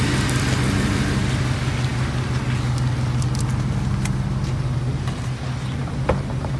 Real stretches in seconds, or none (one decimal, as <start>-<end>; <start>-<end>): 0.0-6.6